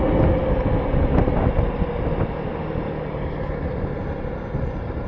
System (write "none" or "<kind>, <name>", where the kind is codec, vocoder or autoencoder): none